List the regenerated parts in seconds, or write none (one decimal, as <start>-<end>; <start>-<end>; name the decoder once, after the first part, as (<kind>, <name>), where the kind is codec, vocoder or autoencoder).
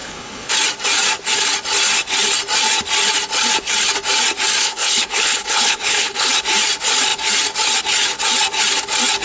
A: 0.0-0.5 (codec, HILCodec); 4.6-6.3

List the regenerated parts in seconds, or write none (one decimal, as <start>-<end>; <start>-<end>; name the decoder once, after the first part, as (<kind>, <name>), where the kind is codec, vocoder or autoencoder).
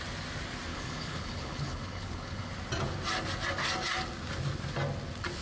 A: 0.7-2.5 (codec, HILCodec)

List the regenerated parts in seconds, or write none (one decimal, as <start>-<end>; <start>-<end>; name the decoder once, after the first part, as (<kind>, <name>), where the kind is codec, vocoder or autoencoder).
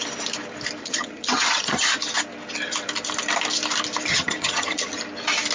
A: 0.8-1.9 (vocoder, HiFi-GAN); 4.1-5.0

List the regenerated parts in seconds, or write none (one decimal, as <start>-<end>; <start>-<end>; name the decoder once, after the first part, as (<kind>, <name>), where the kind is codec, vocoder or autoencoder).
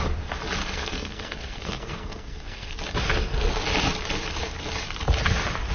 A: 0.6-2.7 (codec, SNAC)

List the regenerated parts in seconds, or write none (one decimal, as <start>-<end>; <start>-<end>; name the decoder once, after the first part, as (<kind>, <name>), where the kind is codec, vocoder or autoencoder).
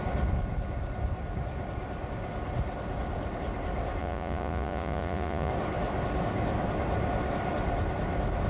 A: 4.0-5.5 (vocoder, Vocos)